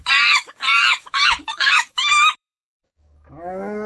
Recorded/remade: remade